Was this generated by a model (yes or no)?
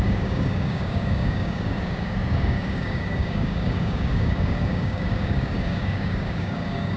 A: yes